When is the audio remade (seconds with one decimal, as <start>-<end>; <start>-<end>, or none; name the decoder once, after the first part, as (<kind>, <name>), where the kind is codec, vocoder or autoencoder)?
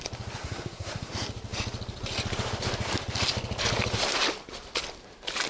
0.4-1.1 (codec, SNAC)